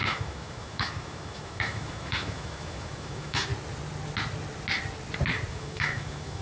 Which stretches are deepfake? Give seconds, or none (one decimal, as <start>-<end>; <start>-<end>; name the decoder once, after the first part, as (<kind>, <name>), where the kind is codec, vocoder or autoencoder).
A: 0.0-3.5 (autoencoder, DAC-VAE); 5.5-6.4